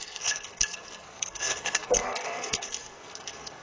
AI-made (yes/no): yes